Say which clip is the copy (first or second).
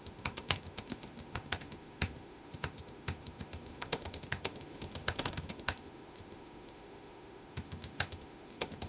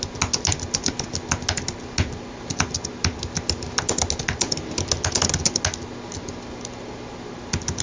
first